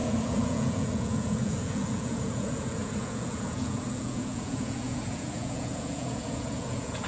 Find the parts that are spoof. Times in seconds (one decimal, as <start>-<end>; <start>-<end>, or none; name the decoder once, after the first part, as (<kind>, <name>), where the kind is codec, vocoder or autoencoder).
0.0-7.1 (vocoder, Vocos)